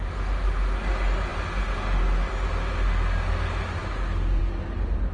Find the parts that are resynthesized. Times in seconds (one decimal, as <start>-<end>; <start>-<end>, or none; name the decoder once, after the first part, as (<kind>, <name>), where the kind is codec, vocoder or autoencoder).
none